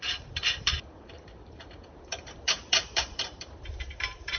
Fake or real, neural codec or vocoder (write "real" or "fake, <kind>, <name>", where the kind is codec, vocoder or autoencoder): fake, vocoder, BigVGAN v2